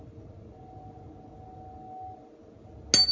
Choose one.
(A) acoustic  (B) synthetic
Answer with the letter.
A